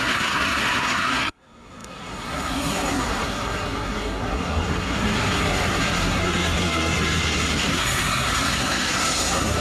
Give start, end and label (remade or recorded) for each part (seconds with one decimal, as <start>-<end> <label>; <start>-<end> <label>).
0.0-9.6 remade